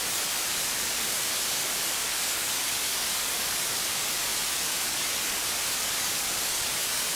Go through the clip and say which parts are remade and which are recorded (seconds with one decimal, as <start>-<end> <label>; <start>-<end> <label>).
0.0-7.2 remade